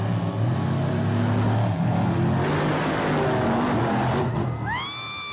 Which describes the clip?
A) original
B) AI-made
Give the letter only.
A